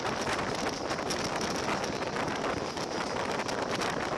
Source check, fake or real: real